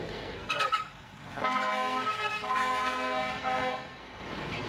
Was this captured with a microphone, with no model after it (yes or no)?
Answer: no